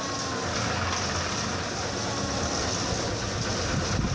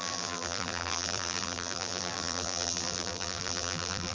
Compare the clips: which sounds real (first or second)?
first